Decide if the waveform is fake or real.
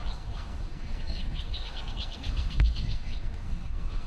fake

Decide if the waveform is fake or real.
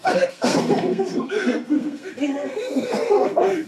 fake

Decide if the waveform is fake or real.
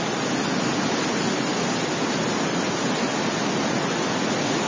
real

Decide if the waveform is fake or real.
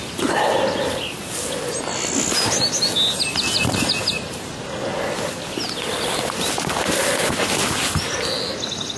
real